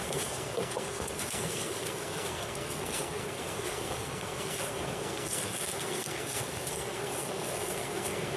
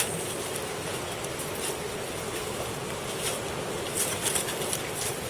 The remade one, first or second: first